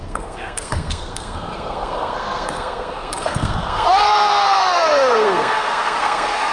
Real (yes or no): no